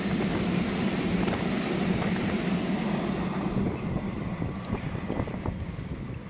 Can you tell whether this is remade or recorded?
recorded